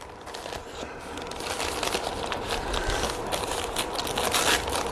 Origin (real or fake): fake